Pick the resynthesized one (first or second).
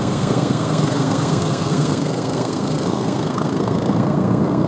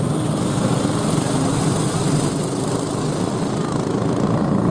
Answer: first